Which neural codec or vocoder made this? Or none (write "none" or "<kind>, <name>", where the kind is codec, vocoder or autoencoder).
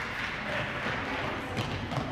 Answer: none